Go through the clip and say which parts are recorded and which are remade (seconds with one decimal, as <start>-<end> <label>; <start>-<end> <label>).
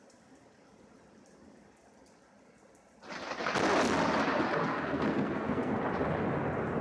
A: 0.0-4.6 recorded; 4.6-5.8 remade; 5.8-6.8 recorded